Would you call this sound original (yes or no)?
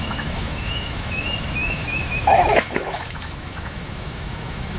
no